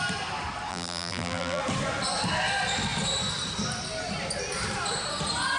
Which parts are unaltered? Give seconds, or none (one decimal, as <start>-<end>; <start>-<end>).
0.0-0.7; 1.6-5.6